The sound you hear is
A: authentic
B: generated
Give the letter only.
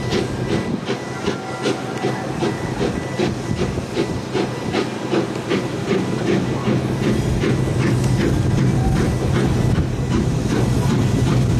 A